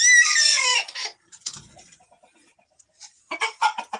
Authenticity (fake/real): real